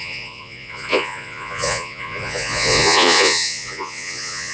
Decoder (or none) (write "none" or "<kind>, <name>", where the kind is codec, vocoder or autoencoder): vocoder, Vocos